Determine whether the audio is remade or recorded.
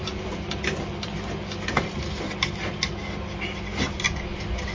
recorded